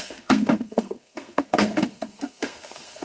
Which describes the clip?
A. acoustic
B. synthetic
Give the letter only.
B